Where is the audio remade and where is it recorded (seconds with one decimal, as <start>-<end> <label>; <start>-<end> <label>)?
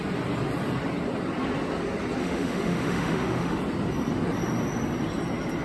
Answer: 0.0-2.2 recorded; 2.2-3.6 remade; 3.6-5.6 recorded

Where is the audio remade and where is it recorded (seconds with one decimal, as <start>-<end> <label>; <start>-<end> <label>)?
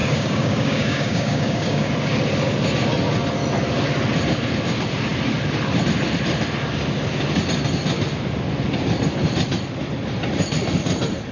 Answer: 0.0-1.9 remade; 1.9-11.3 recorded